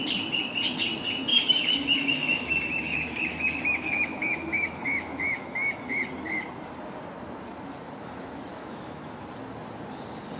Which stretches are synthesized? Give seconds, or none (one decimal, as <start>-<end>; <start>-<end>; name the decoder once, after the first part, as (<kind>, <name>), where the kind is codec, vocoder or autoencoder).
1.3-5.9 (autoencoder, DAC-VAE); 8.5-9.2